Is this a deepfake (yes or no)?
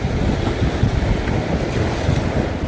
no